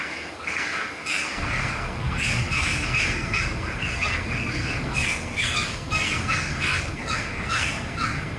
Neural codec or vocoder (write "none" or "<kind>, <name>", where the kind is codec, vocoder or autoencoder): codec, SNAC